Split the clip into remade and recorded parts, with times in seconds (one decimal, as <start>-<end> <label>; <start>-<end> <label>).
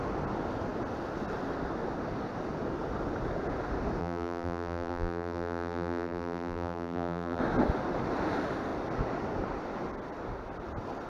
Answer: 0.0-4.0 recorded; 4.0-7.4 remade; 7.4-11.1 recorded